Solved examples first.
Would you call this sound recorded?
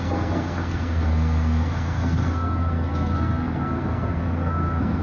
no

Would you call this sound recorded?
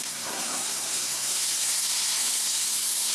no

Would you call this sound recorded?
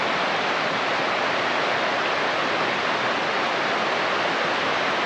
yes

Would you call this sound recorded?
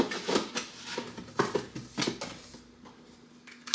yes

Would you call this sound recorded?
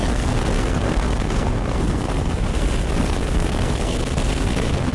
no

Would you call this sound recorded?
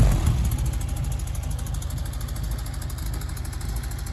yes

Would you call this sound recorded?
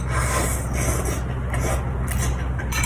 yes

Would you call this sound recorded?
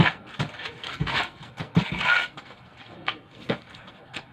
no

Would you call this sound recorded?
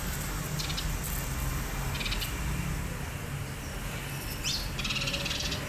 yes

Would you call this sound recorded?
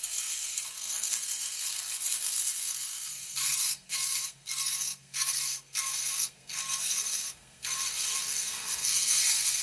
no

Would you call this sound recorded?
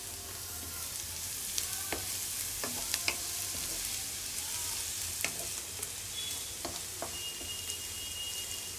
yes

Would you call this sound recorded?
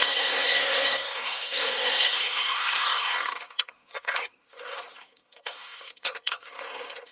no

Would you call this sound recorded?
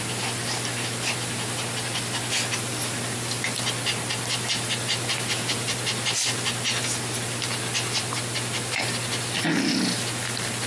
yes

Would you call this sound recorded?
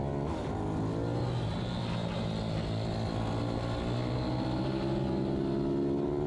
yes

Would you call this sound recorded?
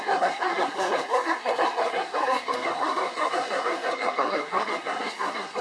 no